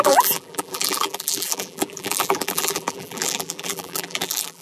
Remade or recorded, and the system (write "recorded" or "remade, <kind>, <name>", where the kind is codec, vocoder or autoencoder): remade, vocoder, BigVGAN v2